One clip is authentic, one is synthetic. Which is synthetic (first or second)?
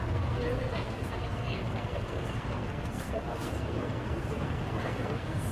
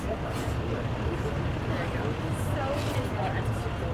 first